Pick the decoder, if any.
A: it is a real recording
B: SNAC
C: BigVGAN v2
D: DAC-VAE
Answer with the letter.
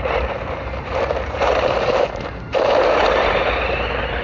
C